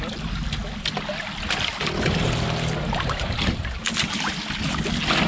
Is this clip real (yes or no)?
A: yes